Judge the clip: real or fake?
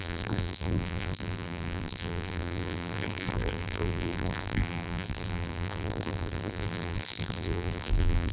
fake